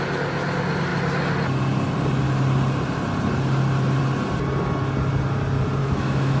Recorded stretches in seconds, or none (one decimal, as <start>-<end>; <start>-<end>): 0.0-5.8